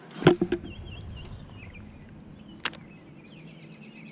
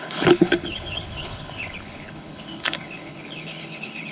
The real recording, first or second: first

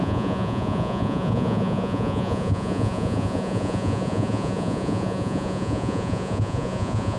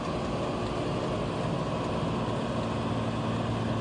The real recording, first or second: second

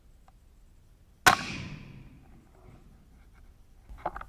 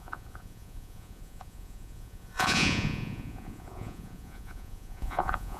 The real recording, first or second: first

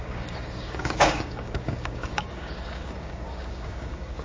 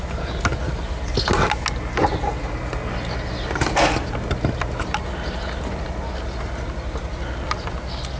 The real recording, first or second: second